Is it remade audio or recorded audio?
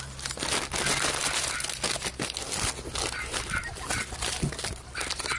recorded